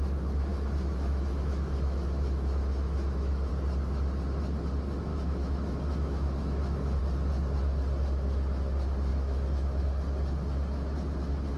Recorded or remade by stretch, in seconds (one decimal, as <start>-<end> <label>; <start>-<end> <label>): 0.0-0.5 recorded; 0.5-3.5 remade; 3.5-5.1 recorded; 5.1-7.0 remade; 7.0-9.1 recorded; 9.1-9.8 remade; 9.8-11.6 recorded

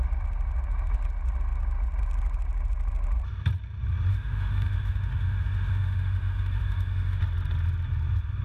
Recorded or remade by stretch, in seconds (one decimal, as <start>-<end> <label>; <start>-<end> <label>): 0.0-4.1 recorded; 4.1-7.2 remade; 7.2-8.4 recorded

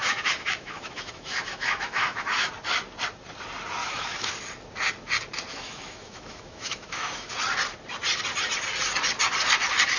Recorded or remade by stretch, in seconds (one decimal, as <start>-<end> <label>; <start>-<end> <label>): 0.0-2.5 remade; 2.5-3.8 recorded; 3.8-4.3 remade; 4.3-5.5 recorded; 5.5-7.3 remade; 7.3-10.0 recorded

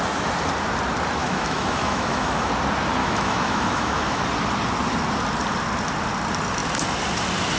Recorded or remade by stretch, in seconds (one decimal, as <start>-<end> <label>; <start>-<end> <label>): 0.0-1.2 recorded; 1.2-2.5 remade; 2.5-3.0 recorded; 3.0-4.2 remade; 4.2-7.6 recorded

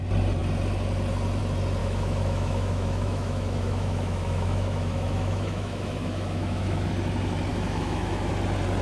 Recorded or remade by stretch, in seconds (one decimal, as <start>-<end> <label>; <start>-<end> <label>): 0.0-1.8 recorded; 1.8-6.9 remade; 6.9-7.5 recorded; 7.5-8.3 remade; 8.3-8.8 recorded

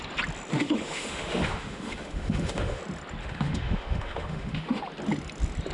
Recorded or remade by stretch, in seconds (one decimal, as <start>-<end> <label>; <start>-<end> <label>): 0.0-0.5 recorded; 0.5-2.8 remade; 2.8-3.2 recorded; 3.2-4.8 remade; 4.8-5.7 recorded

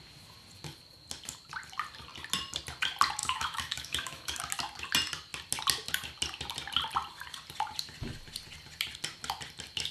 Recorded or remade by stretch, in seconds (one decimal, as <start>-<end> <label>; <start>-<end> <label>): 0.0-3.2 recorded; 3.2-4.4 remade; 4.4-9.9 recorded

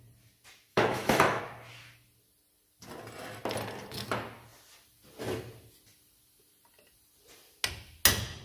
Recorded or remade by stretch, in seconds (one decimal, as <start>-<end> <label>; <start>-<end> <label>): 0.0-0.7 recorded; 0.7-1.4 remade; 1.4-8.4 recorded